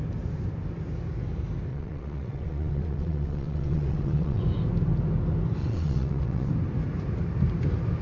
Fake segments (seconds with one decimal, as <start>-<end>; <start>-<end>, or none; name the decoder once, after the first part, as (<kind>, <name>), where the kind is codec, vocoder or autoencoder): 1.7-4.4 (vocoder, WaveNeXt); 5.6-6.5